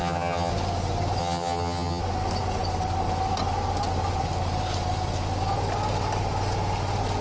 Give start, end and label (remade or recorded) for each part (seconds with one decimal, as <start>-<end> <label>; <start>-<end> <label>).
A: 0.0-0.5 remade; 0.5-1.2 recorded; 1.2-2.0 remade; 2.0-7.2 recorded